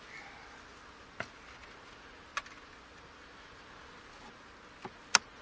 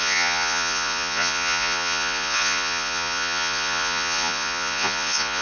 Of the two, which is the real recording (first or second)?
first